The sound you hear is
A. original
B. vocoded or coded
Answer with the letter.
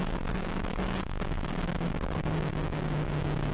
B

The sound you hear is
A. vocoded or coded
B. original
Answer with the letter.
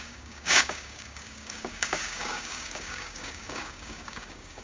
A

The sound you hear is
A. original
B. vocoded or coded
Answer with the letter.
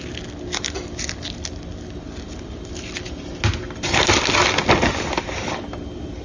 A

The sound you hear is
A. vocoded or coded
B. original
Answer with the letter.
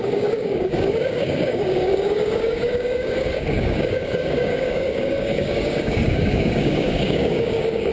A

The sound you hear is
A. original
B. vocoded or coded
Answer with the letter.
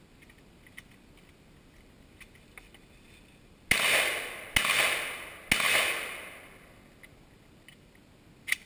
A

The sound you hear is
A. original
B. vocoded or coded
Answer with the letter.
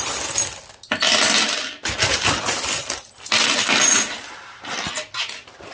A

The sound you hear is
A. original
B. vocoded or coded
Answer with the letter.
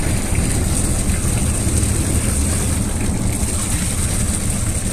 A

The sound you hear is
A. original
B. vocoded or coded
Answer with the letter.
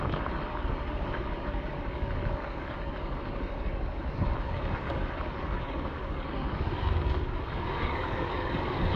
B